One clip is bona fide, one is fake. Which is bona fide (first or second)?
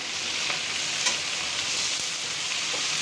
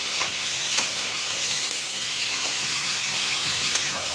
first